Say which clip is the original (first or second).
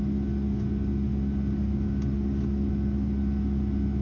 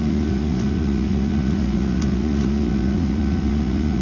first